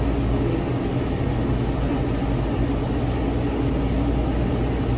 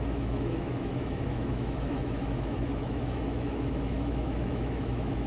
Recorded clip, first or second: first